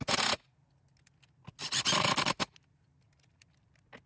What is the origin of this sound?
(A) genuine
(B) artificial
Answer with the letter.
A